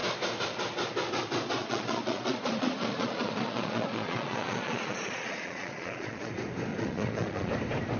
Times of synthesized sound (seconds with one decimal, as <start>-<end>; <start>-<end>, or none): 1.6-6.3; 6.7-7.5